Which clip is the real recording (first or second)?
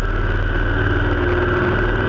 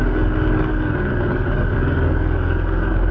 first